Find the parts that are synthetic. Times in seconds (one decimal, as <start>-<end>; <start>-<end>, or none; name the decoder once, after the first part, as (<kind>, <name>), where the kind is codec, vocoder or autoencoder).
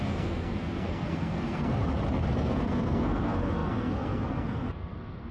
0.0-1.8 (codec, SNAC); 2.4-5.3